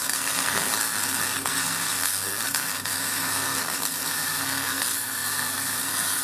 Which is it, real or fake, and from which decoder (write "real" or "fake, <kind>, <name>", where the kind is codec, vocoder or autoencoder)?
fake, codec, SNAC